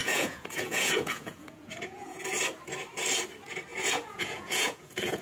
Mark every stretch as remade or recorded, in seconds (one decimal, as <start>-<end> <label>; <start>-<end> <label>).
0.0-2.2 remade; 2.2-3.7 recorded; 3.7-5.2 remade